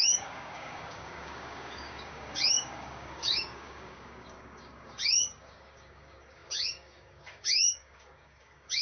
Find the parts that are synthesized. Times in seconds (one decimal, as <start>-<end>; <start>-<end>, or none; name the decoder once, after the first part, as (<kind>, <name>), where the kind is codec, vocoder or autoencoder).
0.0-8.8 (codec, DAC)